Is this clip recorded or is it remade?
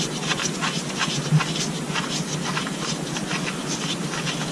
recorded